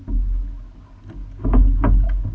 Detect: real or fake real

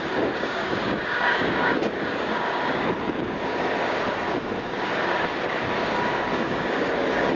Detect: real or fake fake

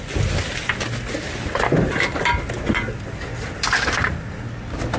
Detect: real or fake real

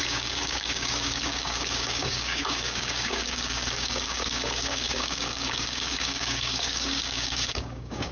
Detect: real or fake fake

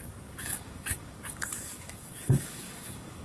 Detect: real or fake fake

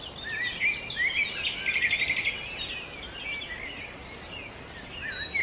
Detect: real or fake real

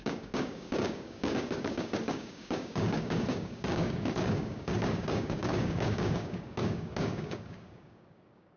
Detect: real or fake fake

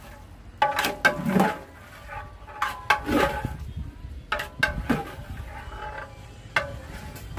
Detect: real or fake real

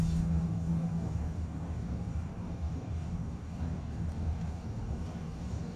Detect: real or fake fake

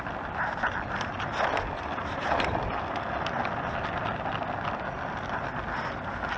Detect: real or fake real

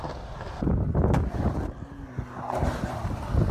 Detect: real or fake real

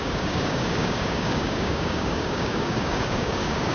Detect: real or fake fake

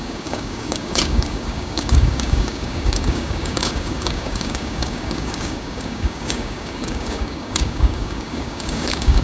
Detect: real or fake fake